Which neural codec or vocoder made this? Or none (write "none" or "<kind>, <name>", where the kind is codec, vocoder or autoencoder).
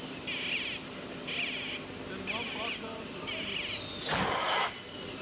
none